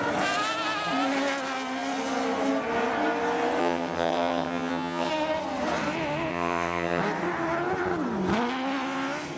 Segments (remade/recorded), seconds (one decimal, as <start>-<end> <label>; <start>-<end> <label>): 0.0-3.6 recorded; 3.6-5.1 remade; 5.1-6.3 recorded; 6.3-7.0 remade; 7.0-9.4 recorded